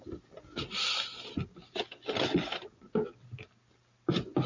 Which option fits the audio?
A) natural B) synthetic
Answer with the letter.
A